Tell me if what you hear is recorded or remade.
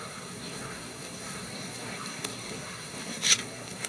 remade